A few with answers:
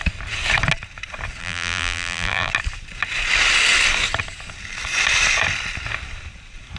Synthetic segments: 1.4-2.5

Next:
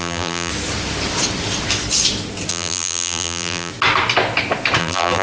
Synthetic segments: 0.0-0.5; 2.5-3.7; 4.8-5.2

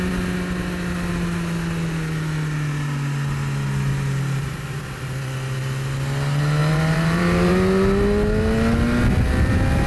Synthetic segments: 6.6-7.5

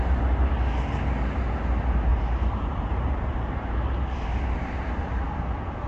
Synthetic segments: 2.1-4.8

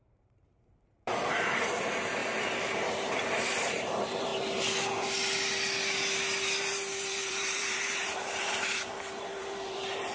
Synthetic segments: 0.0-4.3; 6.6-10.1

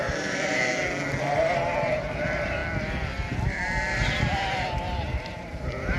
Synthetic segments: 0.0-0.7; 1.2-2.6; 3.4-6.0

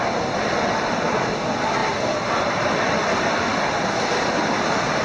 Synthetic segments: 1.8-2.8; 3.5-5.0

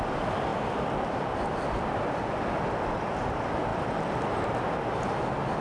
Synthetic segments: 0.5-2.7; 3.7-4.6